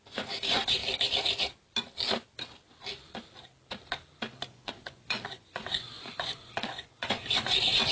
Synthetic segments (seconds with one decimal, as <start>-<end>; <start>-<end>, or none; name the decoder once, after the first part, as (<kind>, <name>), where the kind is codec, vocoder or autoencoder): 0.0-0.8 (vocoder, Vocos); 4.5-7.9